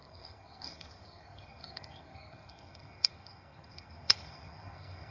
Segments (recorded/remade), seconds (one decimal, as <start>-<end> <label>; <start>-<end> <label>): 0.0-5.1 remade